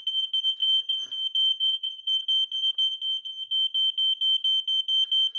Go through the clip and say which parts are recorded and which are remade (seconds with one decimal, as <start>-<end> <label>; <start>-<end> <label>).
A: 0.0-0.6 recorded; 0.6-1.1 remade; 1.1-1.5 recorded; 1.5-2.1 remade; 2.1-5.4 recorded